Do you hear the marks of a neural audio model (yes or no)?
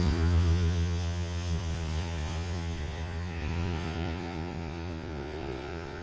yes